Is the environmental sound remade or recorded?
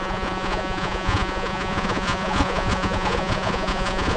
remade